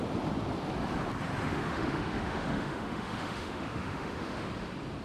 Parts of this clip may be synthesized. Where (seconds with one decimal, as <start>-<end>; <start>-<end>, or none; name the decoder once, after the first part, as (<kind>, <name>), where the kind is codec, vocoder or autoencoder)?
1.5-4.5 (autoencoder, DAC-VAE)